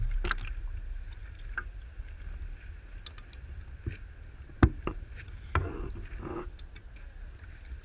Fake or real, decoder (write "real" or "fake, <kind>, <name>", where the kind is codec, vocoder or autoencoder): real